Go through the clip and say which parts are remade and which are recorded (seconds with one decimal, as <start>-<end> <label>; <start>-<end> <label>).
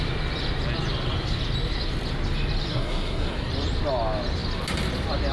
0.0-2.7 recorded; 2.7-3.5 remade; 3.5-5.3 recorded